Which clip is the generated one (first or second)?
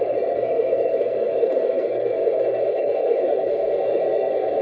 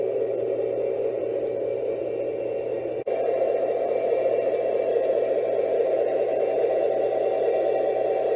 first